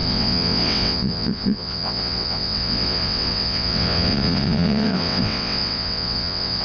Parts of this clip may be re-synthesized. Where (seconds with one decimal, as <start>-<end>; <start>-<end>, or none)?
0.0-6.6